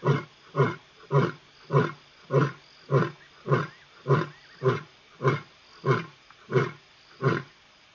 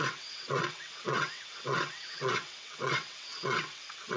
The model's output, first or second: second